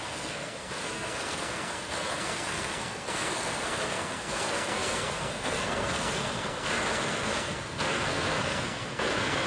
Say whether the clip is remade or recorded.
remade